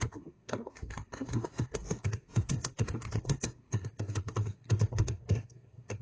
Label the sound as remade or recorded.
remade